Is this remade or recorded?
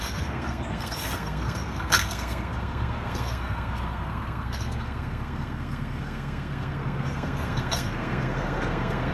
remade